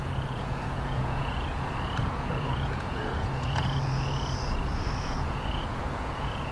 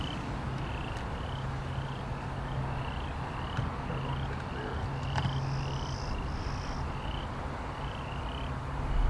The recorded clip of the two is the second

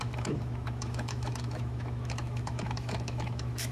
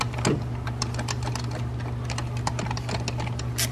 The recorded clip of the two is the second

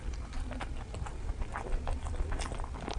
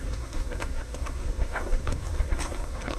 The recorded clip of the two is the first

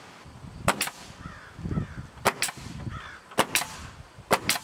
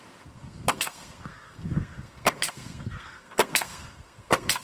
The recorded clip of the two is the first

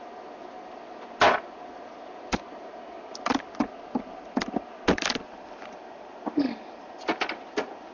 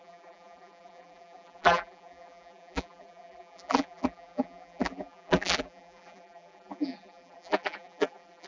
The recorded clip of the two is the first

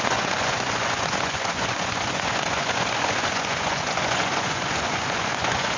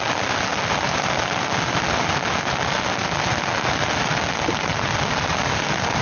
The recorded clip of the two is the second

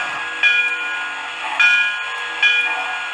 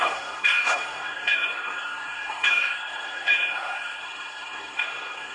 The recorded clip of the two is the first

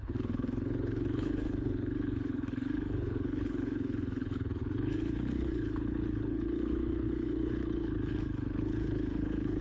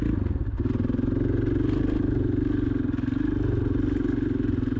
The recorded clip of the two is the second